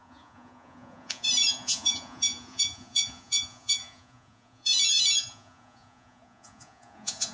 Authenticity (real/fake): fake